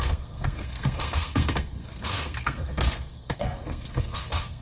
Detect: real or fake fake